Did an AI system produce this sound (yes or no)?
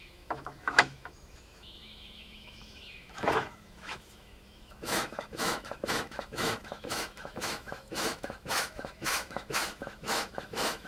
yes